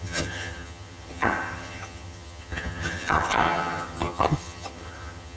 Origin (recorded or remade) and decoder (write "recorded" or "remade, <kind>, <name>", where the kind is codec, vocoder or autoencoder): remade, vocoder, HiFi-GAN